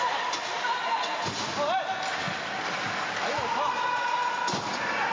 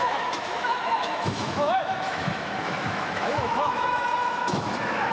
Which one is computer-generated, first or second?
second